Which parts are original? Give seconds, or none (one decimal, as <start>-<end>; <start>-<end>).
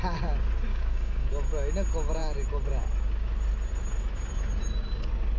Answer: 0.0-0.7; 1.3-5.4